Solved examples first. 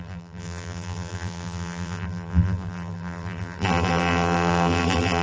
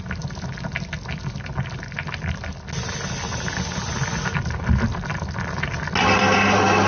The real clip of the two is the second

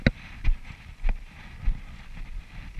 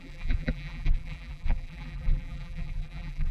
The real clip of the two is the first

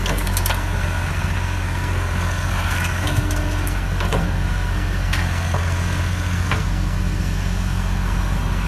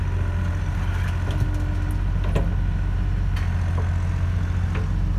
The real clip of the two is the second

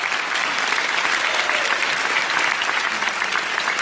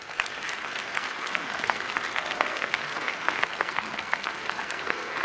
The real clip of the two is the first